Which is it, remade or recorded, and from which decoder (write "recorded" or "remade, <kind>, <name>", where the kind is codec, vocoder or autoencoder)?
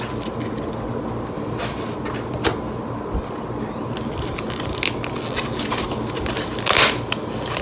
recorded